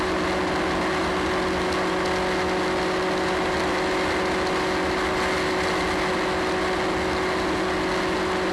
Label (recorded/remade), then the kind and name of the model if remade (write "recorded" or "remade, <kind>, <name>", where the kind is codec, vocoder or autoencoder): recorded